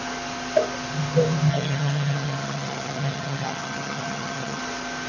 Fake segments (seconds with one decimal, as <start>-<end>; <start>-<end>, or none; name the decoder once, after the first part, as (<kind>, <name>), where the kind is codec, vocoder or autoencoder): 1.5-4.6 (vocoder, HiFi-GAN)